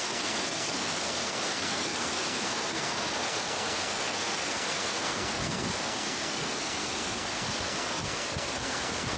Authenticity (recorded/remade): remade